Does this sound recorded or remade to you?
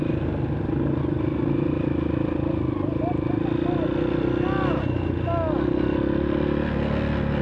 recorded